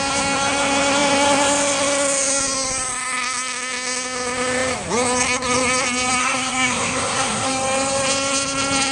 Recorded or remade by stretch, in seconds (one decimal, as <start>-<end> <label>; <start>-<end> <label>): 0.0-6.2 recorded; 6.2-7.5 remade; 7.5-8.9 recorded